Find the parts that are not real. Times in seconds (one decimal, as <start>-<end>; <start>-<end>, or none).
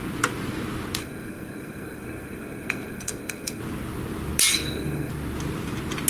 1.0-3.6; 4.5-5.1